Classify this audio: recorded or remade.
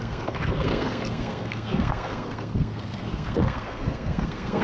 remade